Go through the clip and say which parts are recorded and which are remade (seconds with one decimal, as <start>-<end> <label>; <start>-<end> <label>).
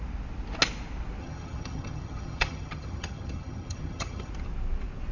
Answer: 0.0-1.2 recorded; 1.2-4.3 remade; 4.3-5.1 recorded